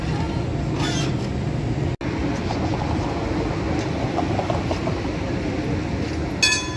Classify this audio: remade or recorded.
recorded